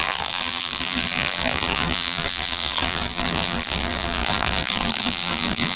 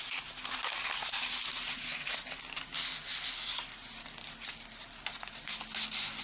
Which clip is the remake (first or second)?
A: first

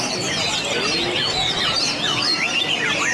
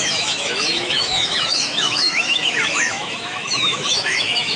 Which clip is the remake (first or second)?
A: second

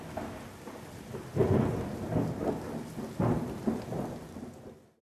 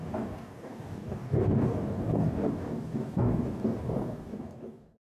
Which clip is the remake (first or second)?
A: second